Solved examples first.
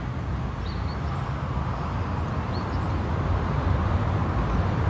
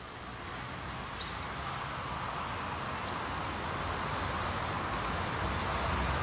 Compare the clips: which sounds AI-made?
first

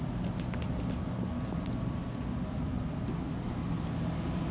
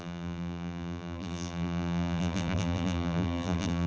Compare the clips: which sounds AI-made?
second